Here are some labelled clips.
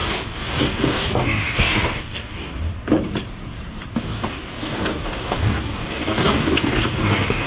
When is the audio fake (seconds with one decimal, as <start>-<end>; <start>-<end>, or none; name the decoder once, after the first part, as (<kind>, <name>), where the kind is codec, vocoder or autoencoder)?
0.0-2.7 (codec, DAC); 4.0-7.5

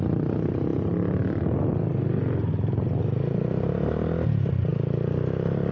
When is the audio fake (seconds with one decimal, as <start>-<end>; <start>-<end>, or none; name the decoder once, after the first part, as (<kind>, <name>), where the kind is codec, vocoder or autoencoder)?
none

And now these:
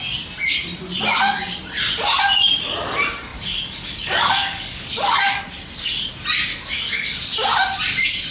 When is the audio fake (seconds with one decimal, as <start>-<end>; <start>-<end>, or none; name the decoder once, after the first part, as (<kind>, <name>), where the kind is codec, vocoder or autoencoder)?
3.3-5.4 (codec, DAC); 6.5-7.2